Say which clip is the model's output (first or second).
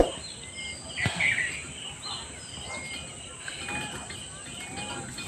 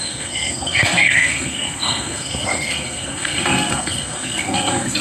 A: second